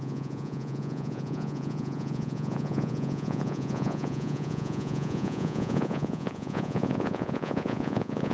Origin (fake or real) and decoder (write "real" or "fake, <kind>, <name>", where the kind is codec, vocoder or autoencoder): fake, vocoder, Vocos